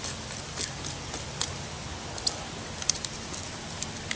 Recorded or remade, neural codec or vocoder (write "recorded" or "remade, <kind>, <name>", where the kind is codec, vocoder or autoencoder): recorded